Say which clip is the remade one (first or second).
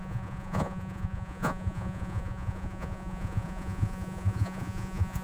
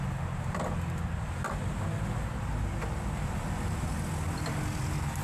first